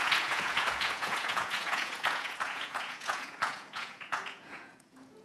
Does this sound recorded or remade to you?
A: remade